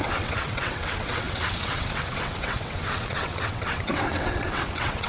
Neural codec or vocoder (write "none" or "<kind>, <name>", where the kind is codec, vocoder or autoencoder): vocoder, WaveNeXt